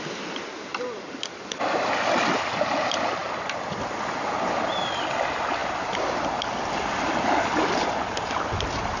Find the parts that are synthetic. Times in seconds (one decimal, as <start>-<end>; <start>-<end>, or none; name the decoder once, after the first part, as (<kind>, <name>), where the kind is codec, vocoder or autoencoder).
0.7-2.3 (vocoder, BigVGAN v2); 3.2-3.9